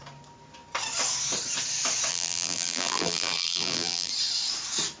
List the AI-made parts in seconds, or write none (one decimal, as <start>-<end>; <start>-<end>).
2.1-4.1